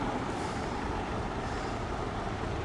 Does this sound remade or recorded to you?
remade